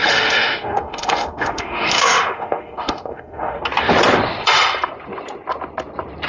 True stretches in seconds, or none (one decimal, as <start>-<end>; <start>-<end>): 3.6-6.3